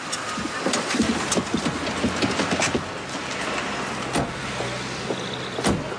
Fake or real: real